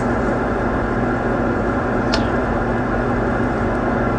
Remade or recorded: remade